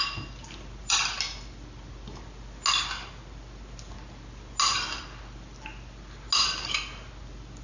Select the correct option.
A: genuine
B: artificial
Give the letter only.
A